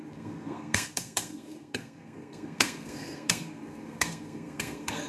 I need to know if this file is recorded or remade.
remade